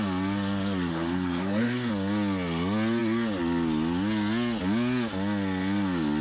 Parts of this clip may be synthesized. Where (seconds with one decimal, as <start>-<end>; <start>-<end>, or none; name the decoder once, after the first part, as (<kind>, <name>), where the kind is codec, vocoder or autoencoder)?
0.9-1.9 (codec, SNAC)